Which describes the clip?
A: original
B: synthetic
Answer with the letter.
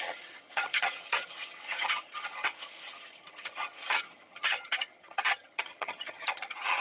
B